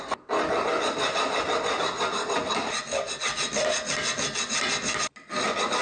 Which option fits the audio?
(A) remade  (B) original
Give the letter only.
B